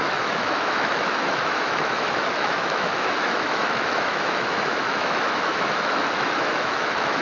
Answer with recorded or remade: remade